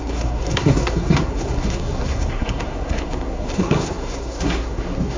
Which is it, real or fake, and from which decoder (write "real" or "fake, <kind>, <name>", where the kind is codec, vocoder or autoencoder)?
fake, codec, SNAC